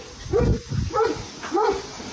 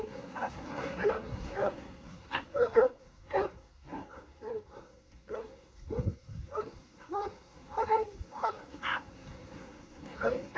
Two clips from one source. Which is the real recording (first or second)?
first